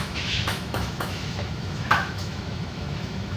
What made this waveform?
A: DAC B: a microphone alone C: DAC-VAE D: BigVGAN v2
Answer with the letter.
C